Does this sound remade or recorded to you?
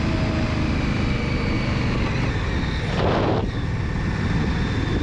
recorded